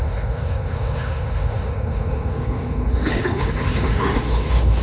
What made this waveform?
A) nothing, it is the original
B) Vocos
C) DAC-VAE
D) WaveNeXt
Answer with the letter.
C